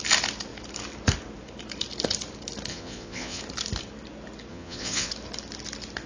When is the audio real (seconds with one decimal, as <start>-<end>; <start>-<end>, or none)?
0.0-2.7; 3.4-4.5; 5.1-6.1